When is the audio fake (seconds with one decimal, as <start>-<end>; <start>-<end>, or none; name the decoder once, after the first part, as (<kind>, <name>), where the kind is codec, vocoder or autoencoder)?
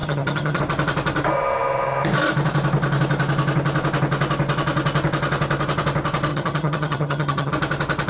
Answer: 0.0-0.6 (vocoder, HiFi-GAN); 6.3-7.5